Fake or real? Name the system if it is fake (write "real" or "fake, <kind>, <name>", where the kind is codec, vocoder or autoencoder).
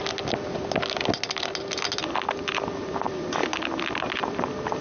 real